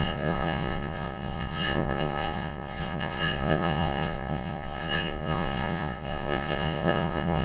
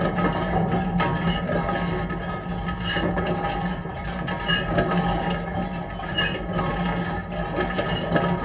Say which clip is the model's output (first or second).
first